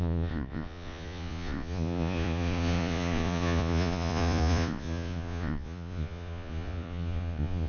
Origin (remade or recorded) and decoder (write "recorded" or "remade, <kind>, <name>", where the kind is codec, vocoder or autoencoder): remade, vocoder, Vocos